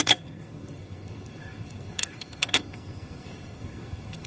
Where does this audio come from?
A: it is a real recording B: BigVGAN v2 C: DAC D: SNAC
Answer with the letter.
D